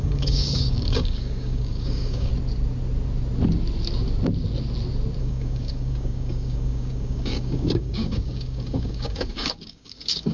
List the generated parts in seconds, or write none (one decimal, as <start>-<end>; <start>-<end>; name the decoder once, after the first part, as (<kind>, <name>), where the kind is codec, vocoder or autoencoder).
0.0-2.3 (codec, DAC); 5.2-10.3